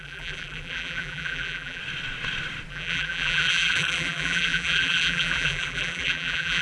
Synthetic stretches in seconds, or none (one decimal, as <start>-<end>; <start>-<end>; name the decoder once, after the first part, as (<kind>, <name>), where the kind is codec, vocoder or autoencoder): 0.0-1.8 (vocoder, BigVGAN v2); 2.7-6.6